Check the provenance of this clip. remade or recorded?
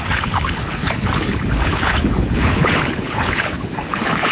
remade